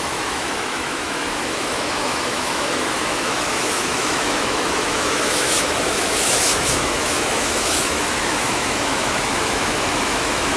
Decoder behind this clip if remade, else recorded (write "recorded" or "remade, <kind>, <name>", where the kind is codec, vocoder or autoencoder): remade, autoencoder, DAC-VAE